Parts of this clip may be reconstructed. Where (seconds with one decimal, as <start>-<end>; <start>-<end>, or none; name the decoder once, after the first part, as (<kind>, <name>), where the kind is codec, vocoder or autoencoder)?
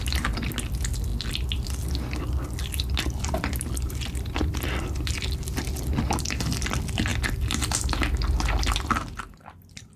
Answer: none